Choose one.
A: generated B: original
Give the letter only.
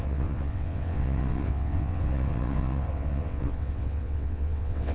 A